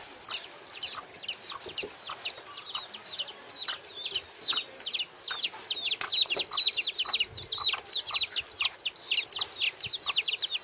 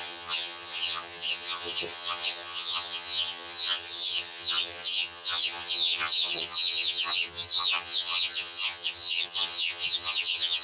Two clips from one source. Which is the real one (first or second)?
first